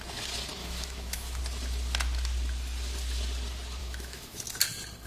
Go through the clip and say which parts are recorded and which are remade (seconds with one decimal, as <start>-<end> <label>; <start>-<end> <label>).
0.0-0.6 recorded; 0.6-1.4 remade; 1.4-3.8 recorded; 3.8-4.4 remade; 4.4-5.1 recorded